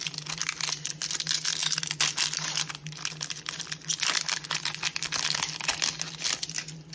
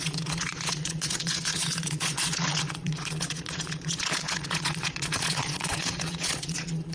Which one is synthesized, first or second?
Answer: second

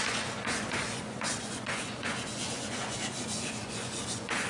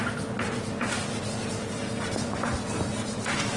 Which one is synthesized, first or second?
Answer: first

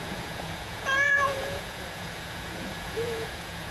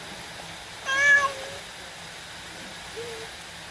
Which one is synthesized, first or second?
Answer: first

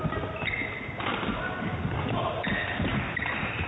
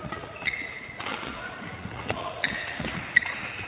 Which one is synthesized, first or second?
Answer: second